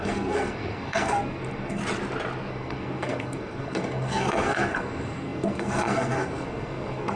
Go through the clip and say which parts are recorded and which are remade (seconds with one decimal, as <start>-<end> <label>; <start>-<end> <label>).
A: 0.0-1.8 remade; 1.8-2.5 recorded; 2.5-7.2 remade